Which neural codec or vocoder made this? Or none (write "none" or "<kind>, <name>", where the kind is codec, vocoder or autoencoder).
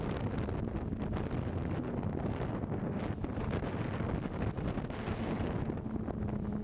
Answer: none